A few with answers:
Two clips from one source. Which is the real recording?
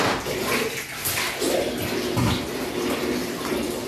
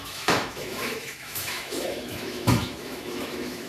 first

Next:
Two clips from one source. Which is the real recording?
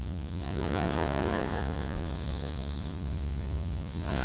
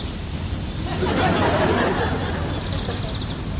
second